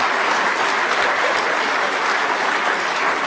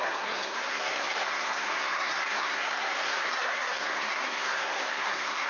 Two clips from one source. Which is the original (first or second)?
first